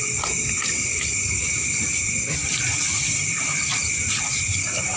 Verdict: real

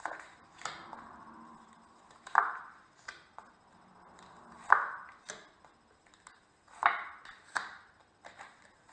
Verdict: real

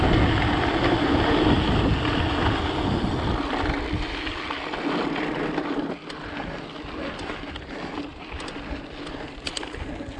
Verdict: real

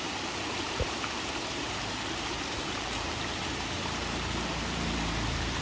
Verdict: fake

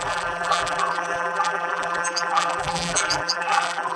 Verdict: fake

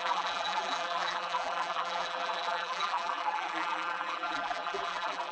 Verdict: fake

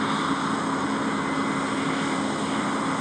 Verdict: real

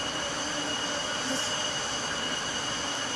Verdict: real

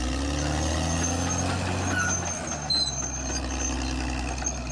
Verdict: real